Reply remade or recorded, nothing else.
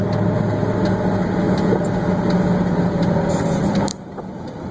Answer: recorded